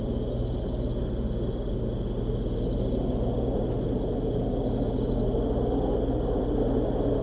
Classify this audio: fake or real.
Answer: real